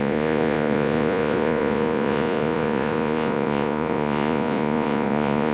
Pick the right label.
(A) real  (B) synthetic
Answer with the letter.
B